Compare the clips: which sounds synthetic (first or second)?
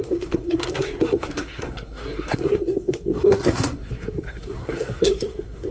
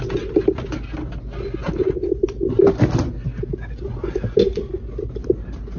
first